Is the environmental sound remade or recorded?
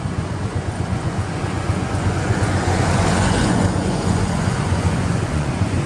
remade